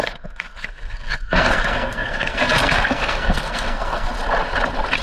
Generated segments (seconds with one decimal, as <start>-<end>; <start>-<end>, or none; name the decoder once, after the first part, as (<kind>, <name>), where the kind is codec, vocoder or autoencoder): 0.0-4.1 (codec, SNAC)